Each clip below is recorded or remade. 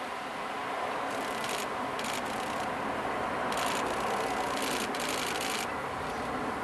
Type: recorded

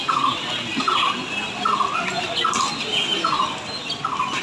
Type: recorded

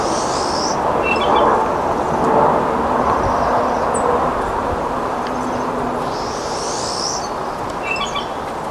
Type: recorded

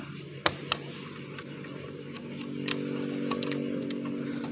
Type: recorded